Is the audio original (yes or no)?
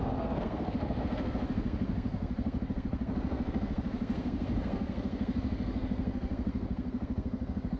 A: no